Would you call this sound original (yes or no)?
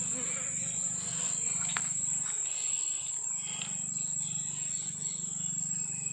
yes